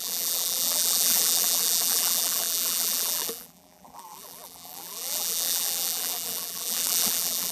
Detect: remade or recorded remade